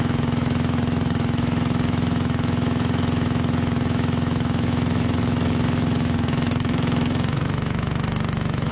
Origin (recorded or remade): remade